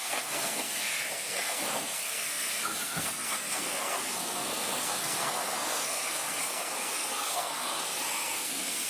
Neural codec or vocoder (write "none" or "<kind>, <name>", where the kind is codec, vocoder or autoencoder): codec, SNAC